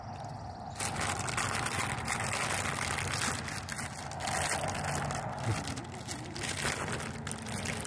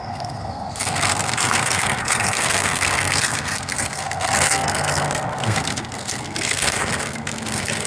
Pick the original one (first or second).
first